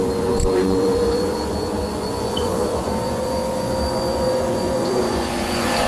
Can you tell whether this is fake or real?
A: fake